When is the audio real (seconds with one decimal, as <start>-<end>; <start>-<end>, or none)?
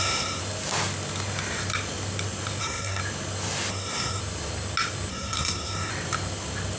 0.4-2.6; 3.0-3.7; 4.2-5.1; 5.9-6.8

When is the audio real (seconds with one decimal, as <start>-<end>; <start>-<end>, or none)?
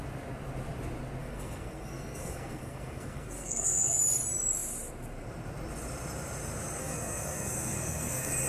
0.0-1.2; 4.0-6.8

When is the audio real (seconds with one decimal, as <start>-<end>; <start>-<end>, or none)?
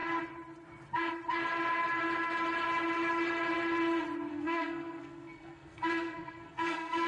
0.0-4.3